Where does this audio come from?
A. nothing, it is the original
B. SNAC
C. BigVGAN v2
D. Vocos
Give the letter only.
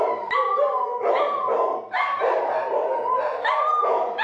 A